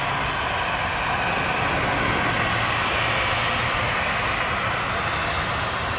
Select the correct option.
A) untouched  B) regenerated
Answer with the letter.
A